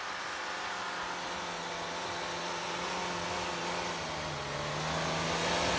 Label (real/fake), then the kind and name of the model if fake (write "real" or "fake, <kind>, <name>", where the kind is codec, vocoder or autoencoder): real